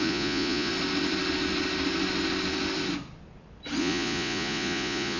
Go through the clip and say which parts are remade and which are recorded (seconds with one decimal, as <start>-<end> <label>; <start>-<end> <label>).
0.0-0.7 remade; 0.7-3.8 recorded; 3.8-5.2 remade